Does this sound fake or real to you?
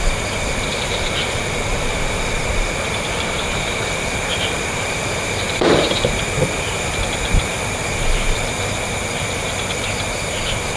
fake